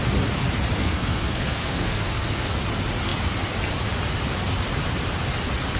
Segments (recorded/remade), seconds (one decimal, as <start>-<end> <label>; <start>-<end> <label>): 0.0-0.8 recorded; 0.8-2.5 remade; 2.5-5.8 recorded